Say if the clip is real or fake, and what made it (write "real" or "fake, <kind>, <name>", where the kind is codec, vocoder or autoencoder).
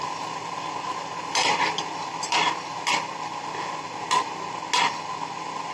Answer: real